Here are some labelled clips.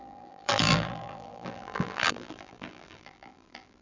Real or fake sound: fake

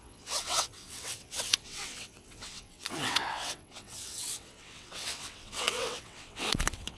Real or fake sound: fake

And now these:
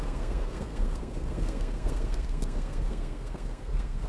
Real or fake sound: fake